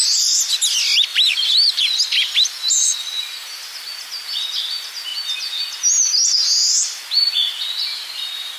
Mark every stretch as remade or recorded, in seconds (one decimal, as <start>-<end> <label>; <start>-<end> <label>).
0.0-1.1 recorded; 1.1-2.0 remade; 2.0-8.6 recorded